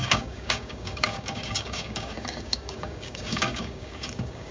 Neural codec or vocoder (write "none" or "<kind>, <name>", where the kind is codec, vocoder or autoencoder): codec, DAC